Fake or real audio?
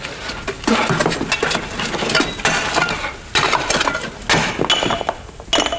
real